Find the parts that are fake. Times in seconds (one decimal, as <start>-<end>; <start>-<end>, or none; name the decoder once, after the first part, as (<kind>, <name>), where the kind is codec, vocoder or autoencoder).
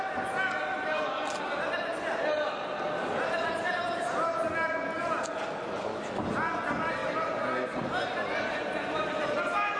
none